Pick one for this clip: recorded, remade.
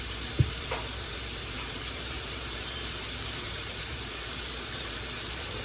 remade